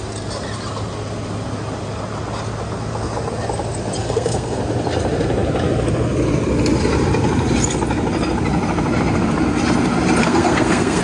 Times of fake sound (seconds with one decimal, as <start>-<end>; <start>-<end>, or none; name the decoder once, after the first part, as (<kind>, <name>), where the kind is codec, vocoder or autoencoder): 4.0-4.6 (codec, SNAC); 10.2-11.0

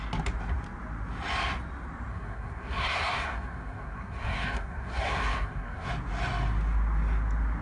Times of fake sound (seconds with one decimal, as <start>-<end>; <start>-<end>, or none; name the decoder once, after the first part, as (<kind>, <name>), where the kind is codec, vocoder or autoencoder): 2.1-5.9 (codec, SNAC)